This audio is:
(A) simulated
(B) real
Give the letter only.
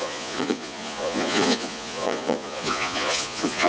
A